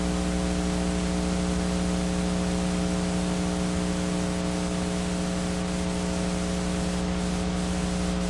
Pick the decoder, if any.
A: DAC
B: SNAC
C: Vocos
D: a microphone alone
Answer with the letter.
D